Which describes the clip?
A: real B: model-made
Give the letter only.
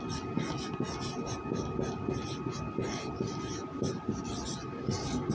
A